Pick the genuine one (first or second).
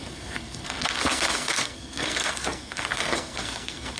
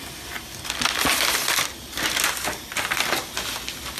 second